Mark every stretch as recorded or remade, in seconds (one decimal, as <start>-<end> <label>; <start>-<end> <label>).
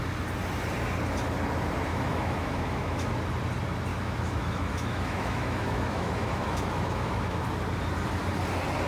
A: 0.0-1.9 recorded; 1.9-3.1 remade; 3.1-3.9 recorded; 3.9-7.4 remade; 7.4-8.9 recorded